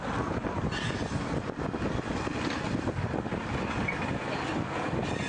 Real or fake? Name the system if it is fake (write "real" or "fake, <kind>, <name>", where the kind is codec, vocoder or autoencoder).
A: real